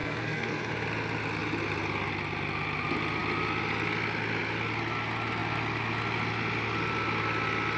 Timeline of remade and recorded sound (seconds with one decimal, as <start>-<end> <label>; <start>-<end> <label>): 0.0-0.7 remade; 0.7-7.8 recorded